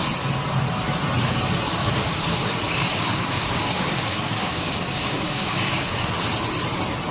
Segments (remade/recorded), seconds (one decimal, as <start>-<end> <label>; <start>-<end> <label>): 0.0-1.8 recorded; 1.8-6.1 remade; 6.1-7.1 recorded

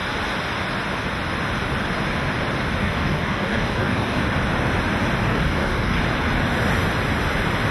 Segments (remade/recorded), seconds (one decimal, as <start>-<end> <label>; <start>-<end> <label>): 0.0-2.8 recorded; 2.8-4.2 remade; 4.2-5.2 recorded; 5.2-6.0 remade; 6.0-7.7 recorded

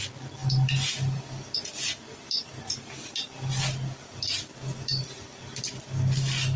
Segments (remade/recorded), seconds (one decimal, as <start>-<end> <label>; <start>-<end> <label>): 0.0-6.6 recorded